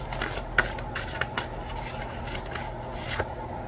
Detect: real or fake real